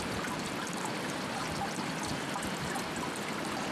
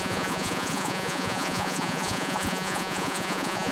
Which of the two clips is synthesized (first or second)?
second